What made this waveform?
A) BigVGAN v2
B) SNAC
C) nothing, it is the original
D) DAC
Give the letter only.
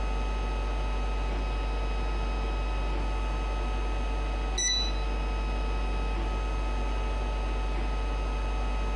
C